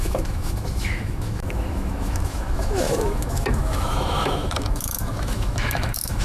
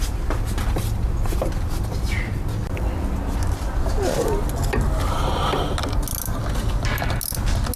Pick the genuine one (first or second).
second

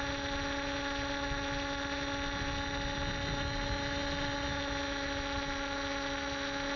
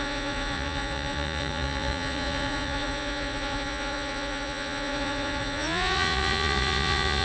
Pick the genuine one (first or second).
first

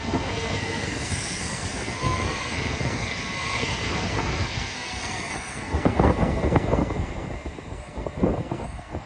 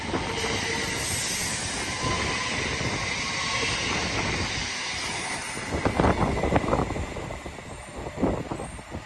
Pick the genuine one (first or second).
second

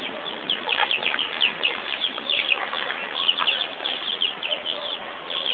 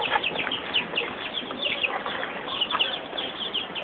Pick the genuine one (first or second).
second